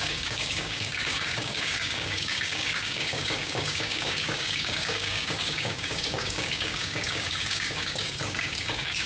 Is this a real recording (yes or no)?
no